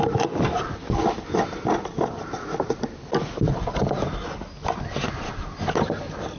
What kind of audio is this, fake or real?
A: real